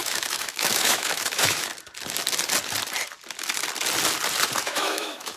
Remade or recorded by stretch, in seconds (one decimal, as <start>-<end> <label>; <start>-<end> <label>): 0.0-1.7 remade; 1.7-4.6 recorded; 4.6-5.4 remade